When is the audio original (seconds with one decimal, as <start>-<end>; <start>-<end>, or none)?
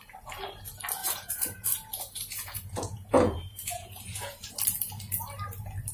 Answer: 0.0-1.0; 4.5-5.9